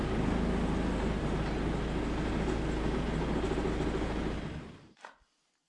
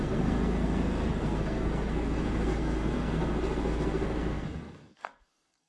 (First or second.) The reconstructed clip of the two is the second